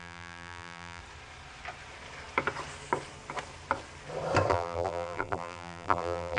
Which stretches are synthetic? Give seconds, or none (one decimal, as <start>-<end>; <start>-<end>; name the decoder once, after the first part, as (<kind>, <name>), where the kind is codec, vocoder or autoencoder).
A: 0.0-1.0 (vocoder, BigVGAN v2); 4.5-6.4